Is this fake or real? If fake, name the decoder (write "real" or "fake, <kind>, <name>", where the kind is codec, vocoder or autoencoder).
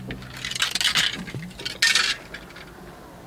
real